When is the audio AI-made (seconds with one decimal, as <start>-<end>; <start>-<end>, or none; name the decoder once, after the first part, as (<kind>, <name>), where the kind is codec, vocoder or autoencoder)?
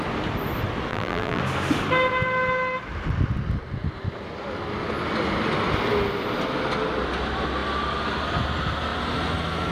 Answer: 0.9-1.4 (vocoder, BigVGAN v2)